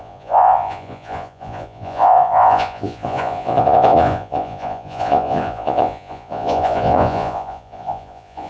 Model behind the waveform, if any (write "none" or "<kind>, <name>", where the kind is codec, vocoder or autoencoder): vocoder, Vocos